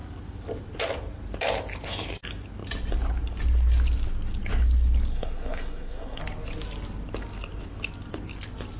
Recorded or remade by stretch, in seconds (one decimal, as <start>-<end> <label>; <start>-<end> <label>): 0.0-5.1 recorded; 5.1-6.2 remade; 6.2-8.8 recorded